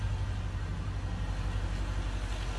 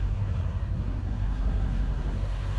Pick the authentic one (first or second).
first